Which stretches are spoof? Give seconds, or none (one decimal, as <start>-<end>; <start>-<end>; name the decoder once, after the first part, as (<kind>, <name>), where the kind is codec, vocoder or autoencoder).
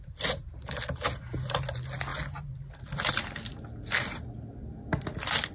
0.0-4.6 (vocoder, BigVGAN v2)